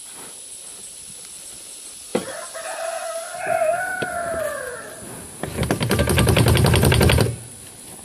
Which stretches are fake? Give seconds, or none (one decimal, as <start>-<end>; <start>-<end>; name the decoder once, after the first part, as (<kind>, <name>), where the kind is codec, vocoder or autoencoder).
none